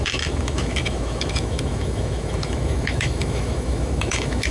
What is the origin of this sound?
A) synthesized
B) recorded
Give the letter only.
A